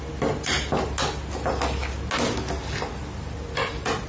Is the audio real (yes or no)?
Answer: yes